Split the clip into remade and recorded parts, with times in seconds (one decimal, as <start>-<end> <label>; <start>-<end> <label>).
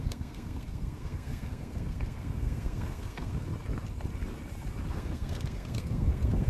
0.0-3.5 remade; 3.5-4.9 recorded; 4.9-6.5 remade